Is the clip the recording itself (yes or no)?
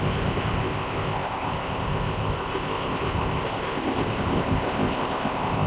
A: no